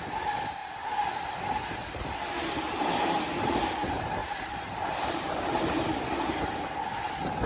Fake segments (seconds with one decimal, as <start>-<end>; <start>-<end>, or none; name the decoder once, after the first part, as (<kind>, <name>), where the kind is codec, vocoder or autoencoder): 4.2-6.0 (vocoder, BigVGAN v2)